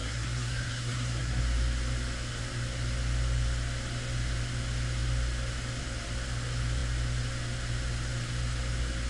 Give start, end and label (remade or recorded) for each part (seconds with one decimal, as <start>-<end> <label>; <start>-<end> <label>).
0.0-1.4 remade; 1.4-9.1 recorded